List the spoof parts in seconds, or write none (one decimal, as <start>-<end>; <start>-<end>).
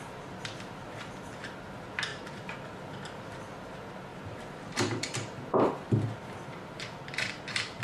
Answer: 2.1-2.8; 4.1-5.7